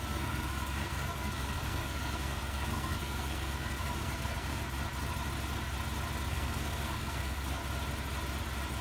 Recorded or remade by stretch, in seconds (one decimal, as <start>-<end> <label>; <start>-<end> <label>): 0.0-4.6 remade; 4.6-6.3 recorded; 6.3-7.6 remade; 7.6-8.8 recorded